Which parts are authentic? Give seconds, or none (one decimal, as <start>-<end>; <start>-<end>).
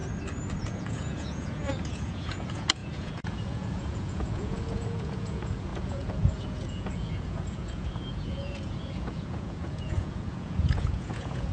0.0-0.6